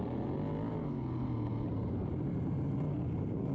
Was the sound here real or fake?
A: real